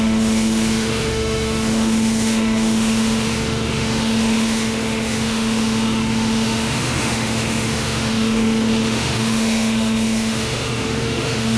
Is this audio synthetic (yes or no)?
yes